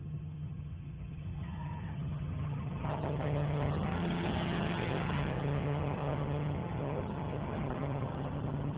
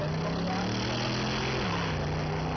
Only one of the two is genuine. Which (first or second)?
second